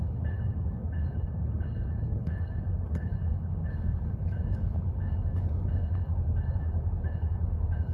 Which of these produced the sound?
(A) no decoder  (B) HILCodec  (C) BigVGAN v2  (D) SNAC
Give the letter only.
B